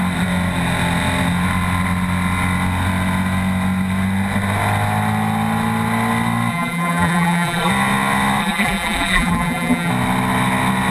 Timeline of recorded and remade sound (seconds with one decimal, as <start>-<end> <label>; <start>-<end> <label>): 0.0-6.5 recorded; 6.5-7.7 remade; 7.7-8.4 recorded; 8.4-9.9 remade; 9.9-10.9 recorded